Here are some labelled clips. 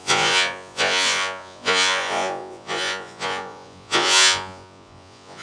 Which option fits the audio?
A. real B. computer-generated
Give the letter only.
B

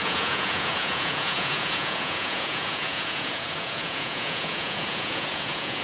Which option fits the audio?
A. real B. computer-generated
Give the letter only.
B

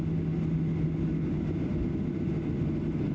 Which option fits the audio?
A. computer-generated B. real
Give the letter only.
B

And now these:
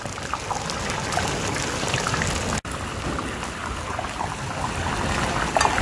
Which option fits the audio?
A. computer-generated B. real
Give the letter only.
B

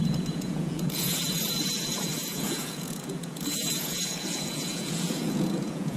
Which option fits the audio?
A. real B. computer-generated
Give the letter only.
B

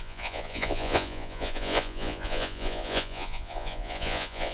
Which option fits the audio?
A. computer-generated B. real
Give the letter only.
A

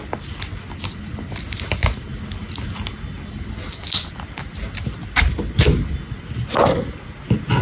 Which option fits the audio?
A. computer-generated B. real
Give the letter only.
B